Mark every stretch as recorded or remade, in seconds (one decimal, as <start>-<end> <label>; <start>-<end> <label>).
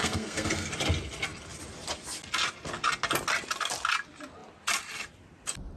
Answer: 0.0-0.7 remade; 0.7-5.8 recorded